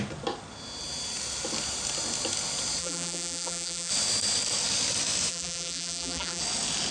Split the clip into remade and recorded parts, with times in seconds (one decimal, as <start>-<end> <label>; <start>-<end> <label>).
0.0-2.8 recorded; 2.8-3.9 remade; 3.9-5.3 recorded; 5.3-6.4 remade; 6.4-6.9 recorded